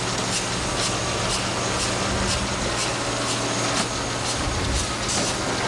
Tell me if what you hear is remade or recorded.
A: recorded